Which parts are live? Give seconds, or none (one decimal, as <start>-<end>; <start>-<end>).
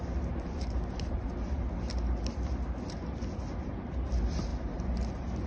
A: 0.0-5.5